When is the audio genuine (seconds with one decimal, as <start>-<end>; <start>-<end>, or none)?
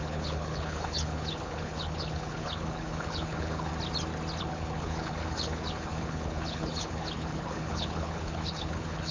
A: 3.7-4.4